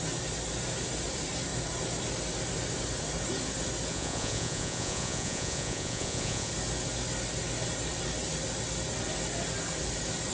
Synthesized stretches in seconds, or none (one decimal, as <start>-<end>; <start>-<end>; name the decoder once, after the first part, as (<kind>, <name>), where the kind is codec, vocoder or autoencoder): 3.9-6.5 (vocoder, Vocos)